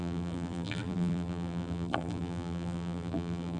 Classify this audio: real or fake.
fake